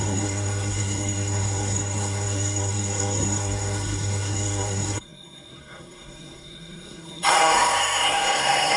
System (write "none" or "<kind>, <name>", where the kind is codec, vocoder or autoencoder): codec, SNAC